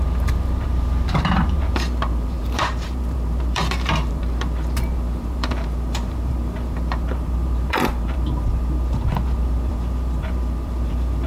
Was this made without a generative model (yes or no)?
no